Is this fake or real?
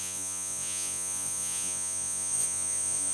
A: fake